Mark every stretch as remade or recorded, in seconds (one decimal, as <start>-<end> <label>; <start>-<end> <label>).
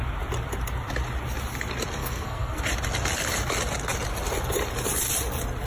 0.0-2.0 recorded; 2.0-2.6 remade; 2.6-5.7 recorded